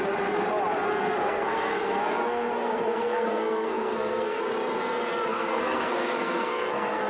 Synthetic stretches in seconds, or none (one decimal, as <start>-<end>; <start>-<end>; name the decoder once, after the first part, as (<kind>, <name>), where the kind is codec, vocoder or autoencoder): 0.9-4.4 (codec, SNAC); 5.3-7.1